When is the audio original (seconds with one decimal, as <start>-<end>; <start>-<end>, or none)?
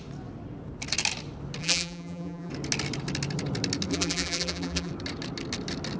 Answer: 0.0-1.6; 2.5-3.9; 4.9-6.0